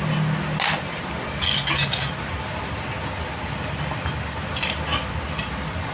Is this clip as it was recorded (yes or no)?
yes